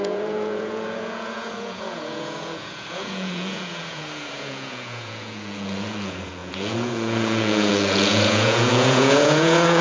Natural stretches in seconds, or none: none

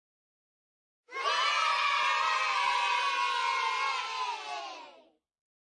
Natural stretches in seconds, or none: 0.0-5.7

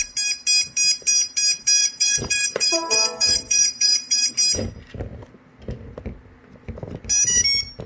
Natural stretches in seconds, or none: 0.0-1.8; 4.3-7.9